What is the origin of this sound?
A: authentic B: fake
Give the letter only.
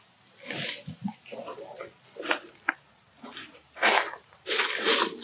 A